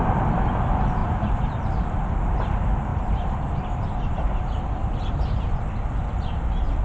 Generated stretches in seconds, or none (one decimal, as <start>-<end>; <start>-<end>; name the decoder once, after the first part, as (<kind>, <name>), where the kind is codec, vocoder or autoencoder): 1.0-1.7 (vocoder, BigVGAN v2); 2.9-5.6